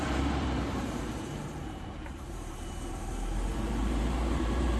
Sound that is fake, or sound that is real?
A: fake